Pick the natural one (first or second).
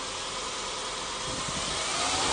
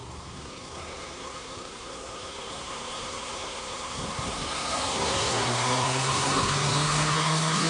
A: first